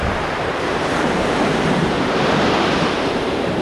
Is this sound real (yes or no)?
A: no